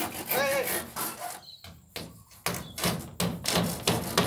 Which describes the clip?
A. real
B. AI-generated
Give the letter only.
A